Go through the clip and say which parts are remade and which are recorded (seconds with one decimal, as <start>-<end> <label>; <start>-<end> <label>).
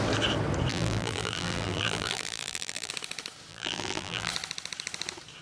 0.0-0.7 recorded; 0.7-2.9 remade; 2.9-3.5 recorded; 3.5-4.3 remade; 4.3-5.4 recorded